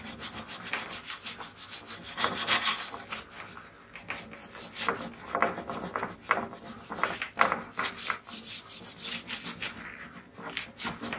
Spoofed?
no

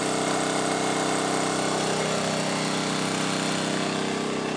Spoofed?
no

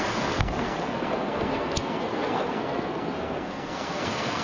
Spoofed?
yes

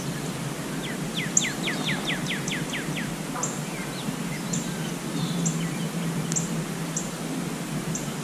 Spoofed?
no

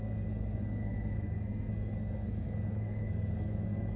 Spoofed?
yes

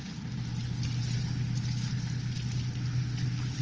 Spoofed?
no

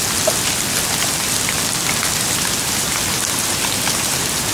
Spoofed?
no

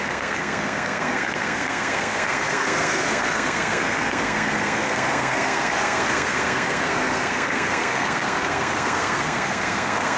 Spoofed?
yes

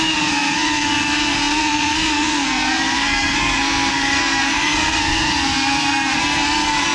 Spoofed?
yes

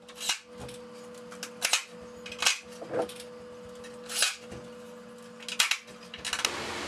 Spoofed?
no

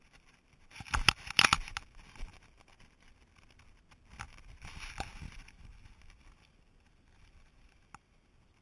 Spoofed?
no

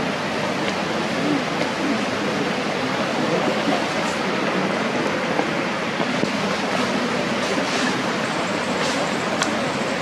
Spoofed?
no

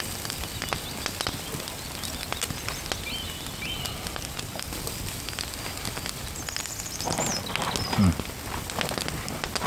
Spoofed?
no